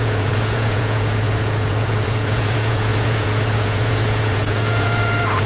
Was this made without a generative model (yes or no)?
no